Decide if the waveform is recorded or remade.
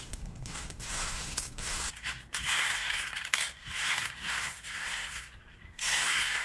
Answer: remade